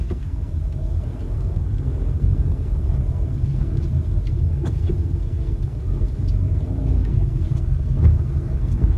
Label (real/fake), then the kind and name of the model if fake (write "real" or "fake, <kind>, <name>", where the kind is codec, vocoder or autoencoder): fake, codec, SNAC